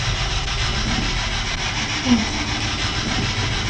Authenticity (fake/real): real